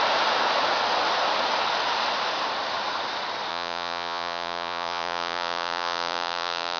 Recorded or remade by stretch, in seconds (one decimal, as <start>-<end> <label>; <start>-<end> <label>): 0.0-3.5 recorded; 3.5-6.8 remade